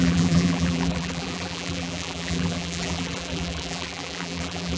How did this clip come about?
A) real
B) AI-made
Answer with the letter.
B